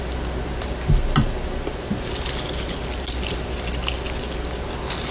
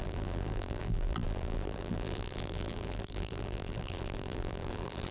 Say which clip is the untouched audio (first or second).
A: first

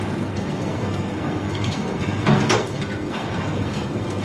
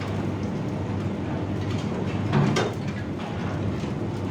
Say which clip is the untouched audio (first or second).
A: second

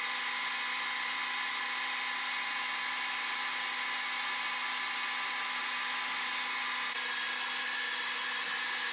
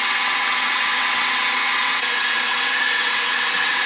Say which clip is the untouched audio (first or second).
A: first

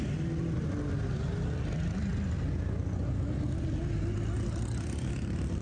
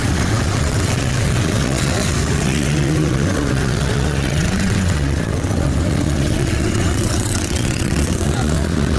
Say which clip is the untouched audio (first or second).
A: first